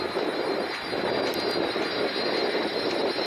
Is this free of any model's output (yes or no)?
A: yes